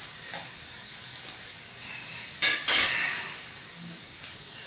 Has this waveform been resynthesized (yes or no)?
yes